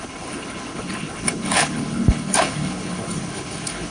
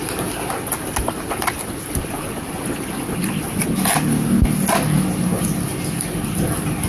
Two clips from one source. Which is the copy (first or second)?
first